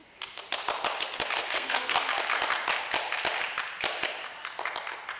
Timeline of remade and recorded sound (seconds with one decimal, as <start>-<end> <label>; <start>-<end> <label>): 0.0-1.4 recorded; 1.4-2.0 remade; 2.0-5.2 recorded